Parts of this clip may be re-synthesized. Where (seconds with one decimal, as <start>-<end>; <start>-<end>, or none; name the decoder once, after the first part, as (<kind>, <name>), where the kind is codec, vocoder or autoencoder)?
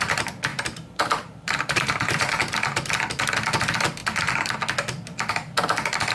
0.5-2.3 (vocoder, BigVGAN v2)